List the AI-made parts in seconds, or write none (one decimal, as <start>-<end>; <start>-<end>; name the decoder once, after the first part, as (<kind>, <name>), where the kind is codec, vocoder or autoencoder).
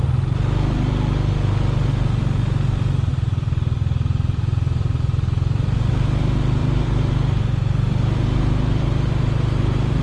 3.1-5.9 (vocoder, BigVGAN v2); 6.6-10.0